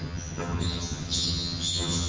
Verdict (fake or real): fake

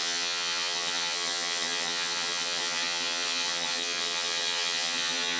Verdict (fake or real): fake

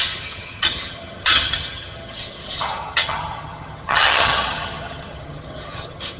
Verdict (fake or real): fake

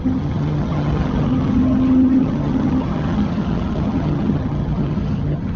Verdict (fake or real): fake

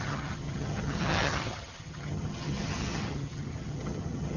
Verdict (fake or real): fake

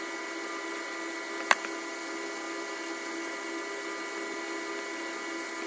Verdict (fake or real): real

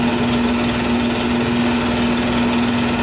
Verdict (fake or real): real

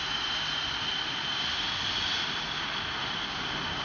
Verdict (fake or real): real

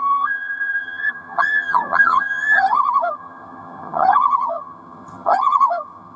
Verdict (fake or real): fake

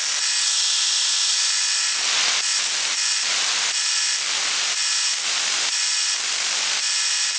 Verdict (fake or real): real